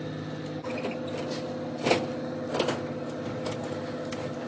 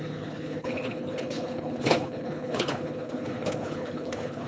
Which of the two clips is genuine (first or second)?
first